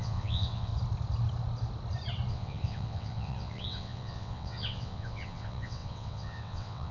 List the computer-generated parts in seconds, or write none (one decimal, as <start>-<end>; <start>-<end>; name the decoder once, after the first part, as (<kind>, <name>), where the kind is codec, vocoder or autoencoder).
0.0-0.7 (vocoder, WaveNeXt); 2.3-6.9